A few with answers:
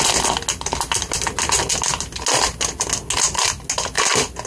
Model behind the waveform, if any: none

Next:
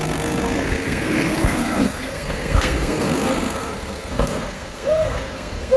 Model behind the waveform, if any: codec, SNAC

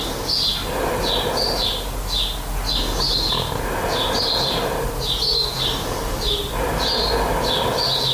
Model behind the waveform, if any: none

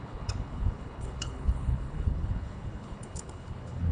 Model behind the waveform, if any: codec, HILCodec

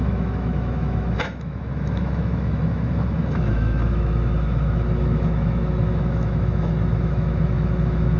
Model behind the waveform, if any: autoencoder, DAC-VAE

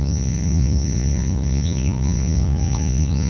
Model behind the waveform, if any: vocoder, Vocos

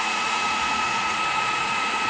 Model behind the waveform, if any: vocoder, Vocos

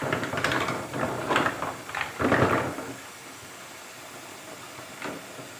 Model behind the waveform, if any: none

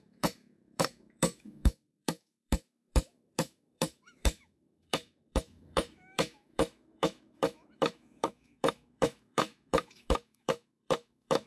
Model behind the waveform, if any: autoencoder, DAC-VAE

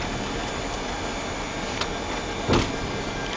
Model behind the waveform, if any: none